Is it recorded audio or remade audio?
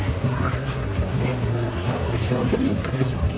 remade